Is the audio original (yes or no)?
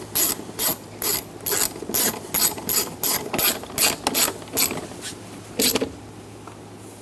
yes